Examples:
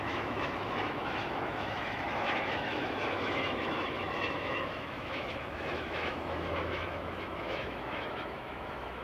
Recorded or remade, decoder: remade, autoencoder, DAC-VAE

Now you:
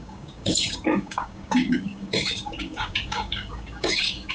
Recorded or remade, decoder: remade, codec, DAC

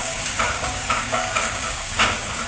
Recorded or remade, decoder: remade, codec, DAC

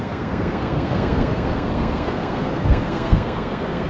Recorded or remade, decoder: remade, codec, SNAC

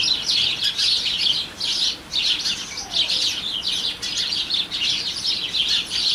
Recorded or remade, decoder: recorded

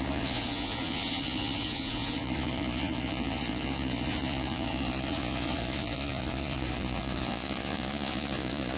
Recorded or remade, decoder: remade, vocoder, Vocos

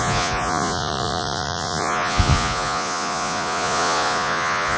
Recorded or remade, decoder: remade, vocoder, Vocos